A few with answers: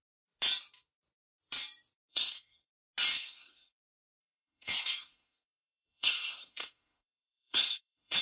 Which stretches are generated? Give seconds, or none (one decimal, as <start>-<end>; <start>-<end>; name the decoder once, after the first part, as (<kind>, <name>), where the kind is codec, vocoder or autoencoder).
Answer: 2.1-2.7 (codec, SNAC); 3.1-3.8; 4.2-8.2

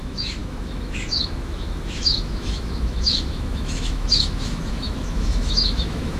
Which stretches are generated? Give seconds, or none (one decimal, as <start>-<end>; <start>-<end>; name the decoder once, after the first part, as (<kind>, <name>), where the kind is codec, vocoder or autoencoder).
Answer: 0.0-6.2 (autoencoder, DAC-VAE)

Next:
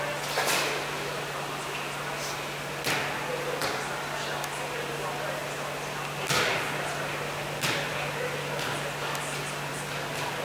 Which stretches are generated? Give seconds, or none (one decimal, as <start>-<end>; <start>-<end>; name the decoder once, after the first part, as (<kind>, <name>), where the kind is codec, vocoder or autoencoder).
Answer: none

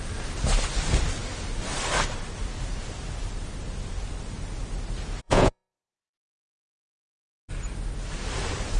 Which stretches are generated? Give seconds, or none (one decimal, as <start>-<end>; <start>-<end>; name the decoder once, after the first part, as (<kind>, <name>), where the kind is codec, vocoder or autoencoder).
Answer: 5.2-7.5 (vocoder, Vocos)

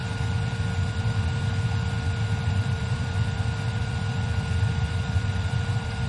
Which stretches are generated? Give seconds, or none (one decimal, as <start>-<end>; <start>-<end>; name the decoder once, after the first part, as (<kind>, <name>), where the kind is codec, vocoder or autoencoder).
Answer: 2.5-6.1 (vocoder, BigVGAN v2)

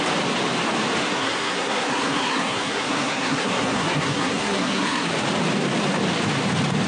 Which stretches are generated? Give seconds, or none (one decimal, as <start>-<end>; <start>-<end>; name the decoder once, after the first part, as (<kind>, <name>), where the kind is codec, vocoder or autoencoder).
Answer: 1.0-5.1 (codec, SNAC)

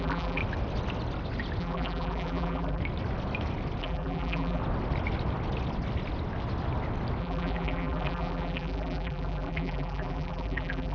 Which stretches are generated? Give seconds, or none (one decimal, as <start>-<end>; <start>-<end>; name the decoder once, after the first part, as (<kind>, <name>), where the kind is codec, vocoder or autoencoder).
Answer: 0.0-0.4 (vocoder, BigVGAN v2); 1.6-2.8; 3.8-4.6; 7.2-10.9

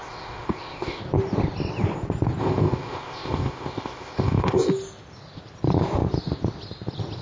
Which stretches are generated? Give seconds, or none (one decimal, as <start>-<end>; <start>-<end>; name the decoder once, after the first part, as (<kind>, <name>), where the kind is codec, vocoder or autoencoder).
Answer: 0.0-1.0 (codec, ZipCodec); 2.4-4.7